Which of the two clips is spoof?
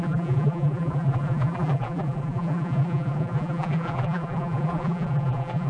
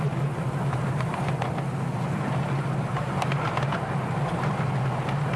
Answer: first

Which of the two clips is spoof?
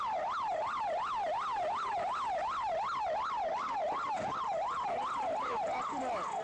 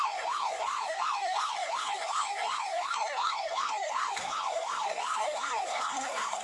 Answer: second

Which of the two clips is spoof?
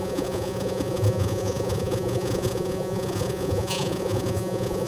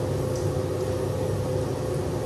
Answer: first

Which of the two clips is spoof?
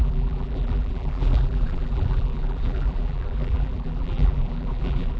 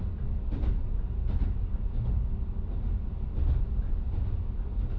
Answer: first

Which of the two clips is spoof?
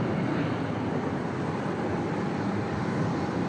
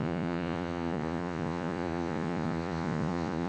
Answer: second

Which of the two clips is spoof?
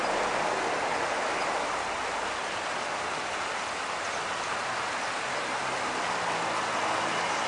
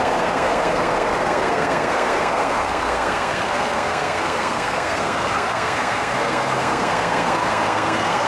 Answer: second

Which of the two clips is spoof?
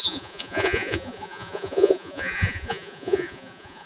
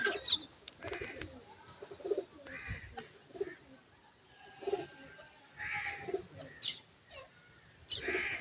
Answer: first